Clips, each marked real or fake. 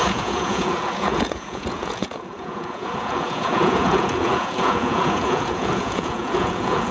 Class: fake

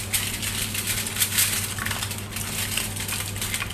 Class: real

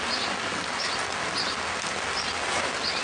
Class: real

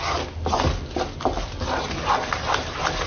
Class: real